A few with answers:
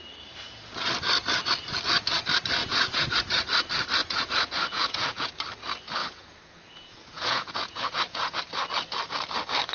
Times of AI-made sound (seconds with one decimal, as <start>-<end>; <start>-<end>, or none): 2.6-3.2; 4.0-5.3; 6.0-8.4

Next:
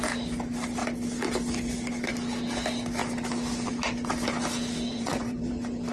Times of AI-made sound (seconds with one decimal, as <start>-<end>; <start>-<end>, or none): 4.9-5.5

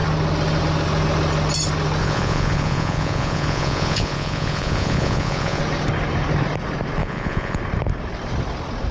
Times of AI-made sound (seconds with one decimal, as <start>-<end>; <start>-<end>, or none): 2.0-5.6; 7.0-7.6

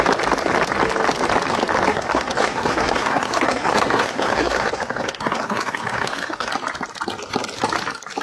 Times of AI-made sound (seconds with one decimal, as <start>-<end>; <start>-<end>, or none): 1.9-6.5